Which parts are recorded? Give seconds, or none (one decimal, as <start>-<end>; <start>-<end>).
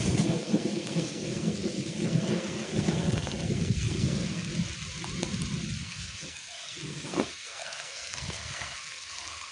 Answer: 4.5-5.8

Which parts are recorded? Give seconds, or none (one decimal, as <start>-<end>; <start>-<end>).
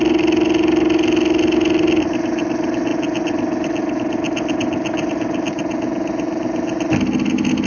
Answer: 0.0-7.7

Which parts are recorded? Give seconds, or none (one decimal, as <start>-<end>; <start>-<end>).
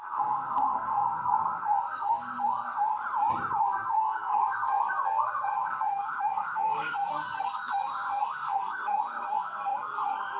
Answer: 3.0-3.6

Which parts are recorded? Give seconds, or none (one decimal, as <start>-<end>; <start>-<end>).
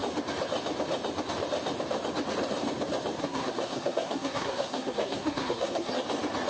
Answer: 0.0-3.2; 5.9-6.5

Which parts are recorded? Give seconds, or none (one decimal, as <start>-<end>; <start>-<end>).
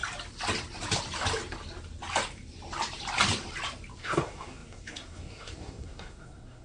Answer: 0.0-4.0